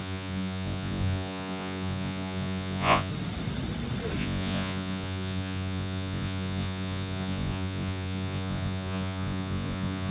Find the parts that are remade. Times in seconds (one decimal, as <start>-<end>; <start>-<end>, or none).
0.0-3.1; 4.2-10.1